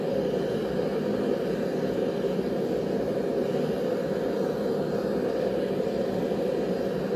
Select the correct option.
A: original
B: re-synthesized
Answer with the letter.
A